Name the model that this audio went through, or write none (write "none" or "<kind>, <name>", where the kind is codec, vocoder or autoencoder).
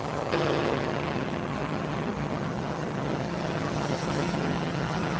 vocoder, HiFi-GAN